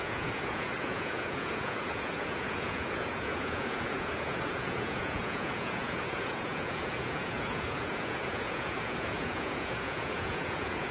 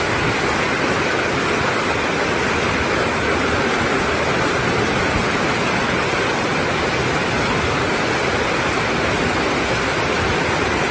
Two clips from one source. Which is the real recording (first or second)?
second